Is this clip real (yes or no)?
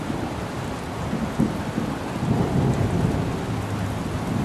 yes